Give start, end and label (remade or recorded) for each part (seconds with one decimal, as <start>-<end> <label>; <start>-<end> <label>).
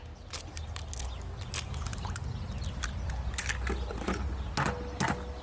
0.0-5.4 recorded